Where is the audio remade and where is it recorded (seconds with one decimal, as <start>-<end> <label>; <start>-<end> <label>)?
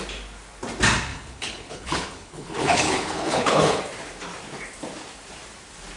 0.0-1.1 recorded; 1.1-3.8 remade; 3.8-6.0 recorded